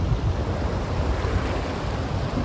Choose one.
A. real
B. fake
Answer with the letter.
A